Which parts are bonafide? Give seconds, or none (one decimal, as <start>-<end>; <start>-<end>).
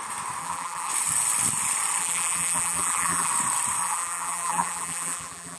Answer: 0.0-0.4; 0.9-2.0; 3.3-3.8